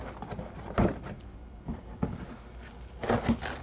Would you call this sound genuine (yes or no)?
yes